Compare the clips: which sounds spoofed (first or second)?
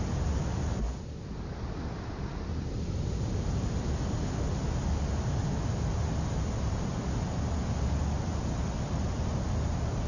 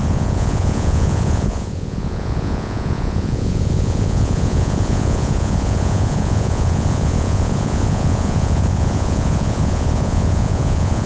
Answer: second